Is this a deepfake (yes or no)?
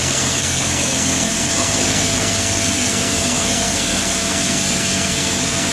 yes